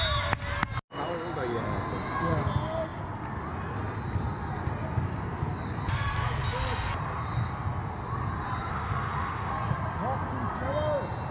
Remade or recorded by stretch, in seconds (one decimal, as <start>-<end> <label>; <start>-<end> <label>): 0.0-8.7 recorded; 8.7-9.5 remade; 9.5-11.3 recorded